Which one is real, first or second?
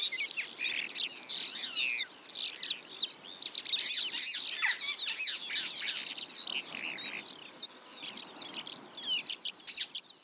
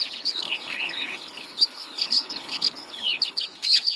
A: first